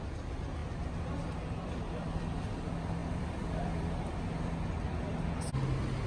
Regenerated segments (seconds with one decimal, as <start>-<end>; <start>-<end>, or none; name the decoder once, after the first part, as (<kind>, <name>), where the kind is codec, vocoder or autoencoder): none